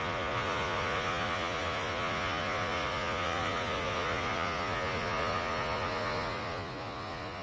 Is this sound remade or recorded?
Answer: remade